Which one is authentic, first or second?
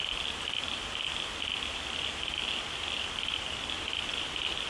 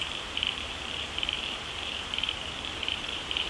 first